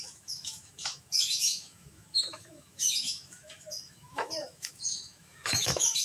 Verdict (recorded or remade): remade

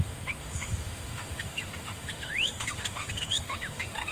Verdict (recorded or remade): remade